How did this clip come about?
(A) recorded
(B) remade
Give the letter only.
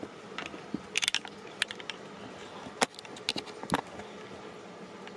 A